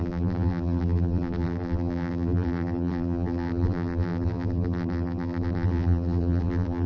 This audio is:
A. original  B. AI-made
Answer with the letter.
B